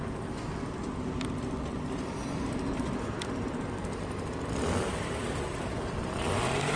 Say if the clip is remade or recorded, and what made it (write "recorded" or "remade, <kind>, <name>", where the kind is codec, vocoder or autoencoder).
remade, vocoder, BigVGAN v2